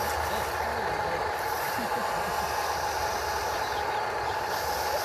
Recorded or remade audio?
recorded